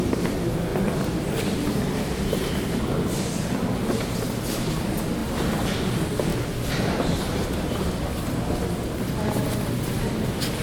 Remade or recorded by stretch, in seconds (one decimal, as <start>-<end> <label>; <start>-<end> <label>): 0.0-0.7 recorded; 0.7-4.4 remade; 4.4-5.2 recorded; 5.2-5.8 remade; 5.8-6.3 recorded; 6.3-8.3 remade; 8.3-10.6 recorded